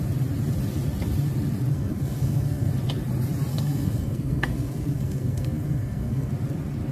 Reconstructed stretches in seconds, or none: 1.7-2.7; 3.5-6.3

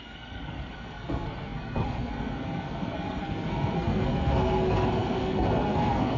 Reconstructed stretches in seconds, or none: 0.0-6.2